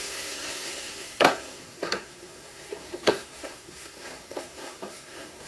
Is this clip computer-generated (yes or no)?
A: yes